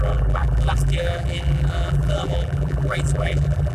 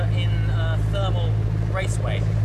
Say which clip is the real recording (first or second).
second